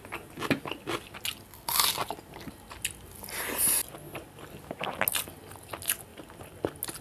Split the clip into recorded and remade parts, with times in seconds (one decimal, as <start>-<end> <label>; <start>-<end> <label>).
0.0-7.0 recorded

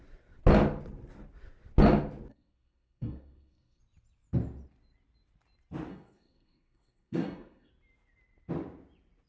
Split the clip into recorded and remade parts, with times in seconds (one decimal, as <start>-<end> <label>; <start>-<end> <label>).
0.0-2.3 recorded; 2.3-3.8 remade; 3.8-5.9 recorded; 5.9-7.7 remade; 7.7-9.3 recorded